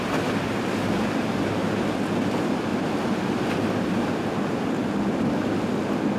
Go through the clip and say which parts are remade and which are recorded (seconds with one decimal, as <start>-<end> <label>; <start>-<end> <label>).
0.0-0.8 recorded; 0.8-1.8 remade; 1.8-6.2 recorded